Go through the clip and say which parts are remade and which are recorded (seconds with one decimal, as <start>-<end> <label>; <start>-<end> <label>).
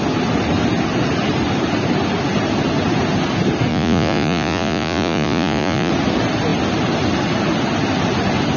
0.0-3.7 recorded; 3.7-5.9 remade; 5.9-8.6 recorded